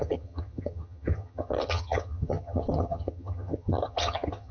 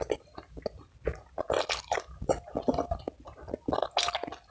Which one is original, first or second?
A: second